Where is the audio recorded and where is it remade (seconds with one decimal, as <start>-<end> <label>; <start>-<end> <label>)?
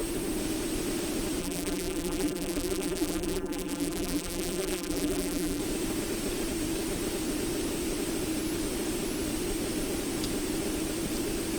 0.0-1.4 recorded; 1.4-5.6 remade; 5.6-11.6 recorded